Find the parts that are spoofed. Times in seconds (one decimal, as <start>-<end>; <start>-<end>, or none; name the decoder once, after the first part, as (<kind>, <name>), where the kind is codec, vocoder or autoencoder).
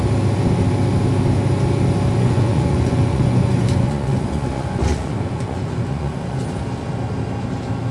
2.2-6.4 (vocoder, Vocos)